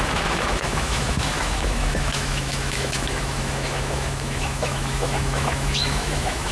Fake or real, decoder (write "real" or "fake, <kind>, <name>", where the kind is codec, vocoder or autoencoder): fake, autoencoder, DAC-VAE